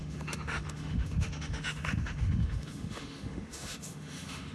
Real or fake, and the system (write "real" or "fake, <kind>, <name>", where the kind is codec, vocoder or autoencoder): fake, autoencoder, DAC-VAE